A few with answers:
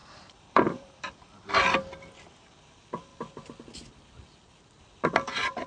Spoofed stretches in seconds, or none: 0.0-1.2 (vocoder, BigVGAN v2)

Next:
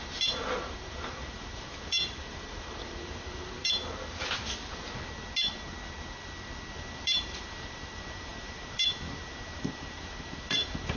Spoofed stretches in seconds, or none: 0.0-3.6 (vocoder, BigVGAN v2); 6.7-11.0

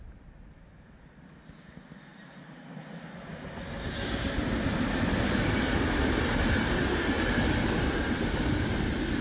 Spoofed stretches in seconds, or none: 2.1-2.8 (vocoder, BigVGAN v2)

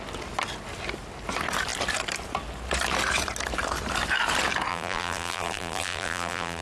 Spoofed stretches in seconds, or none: 4.7-6.6 (vocoder, BigVGAN v2)